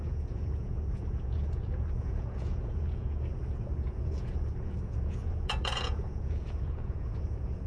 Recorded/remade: remade